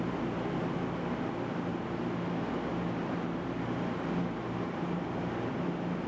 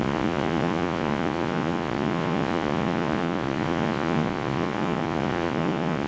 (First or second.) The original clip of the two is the first